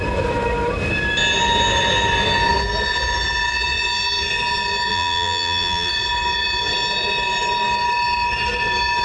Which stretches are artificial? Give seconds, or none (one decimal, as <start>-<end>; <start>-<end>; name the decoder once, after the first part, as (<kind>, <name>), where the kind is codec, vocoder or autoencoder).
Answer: 4.9-5.9 (vocoder, BigVGAN v2)